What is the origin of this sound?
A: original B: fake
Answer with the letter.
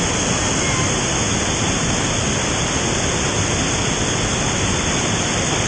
A